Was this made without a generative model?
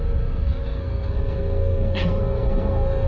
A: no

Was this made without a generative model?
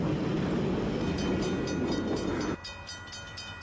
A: yes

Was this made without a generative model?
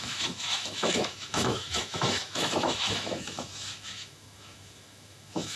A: no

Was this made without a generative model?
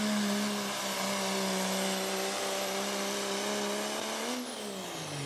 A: yes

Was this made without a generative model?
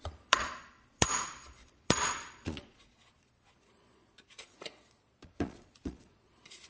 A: no